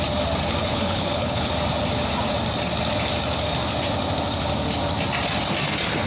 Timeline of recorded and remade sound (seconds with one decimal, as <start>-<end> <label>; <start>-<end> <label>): 0.0-0.6 recorded; 0.6-1.5 remade; 1.5-6.1 recorded